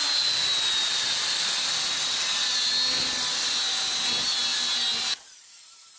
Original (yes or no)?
yes